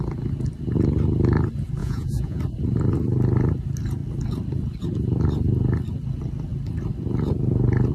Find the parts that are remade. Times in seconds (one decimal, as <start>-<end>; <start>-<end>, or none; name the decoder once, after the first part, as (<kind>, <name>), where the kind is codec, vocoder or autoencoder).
1.8-2.4 (vocoder, Vocos)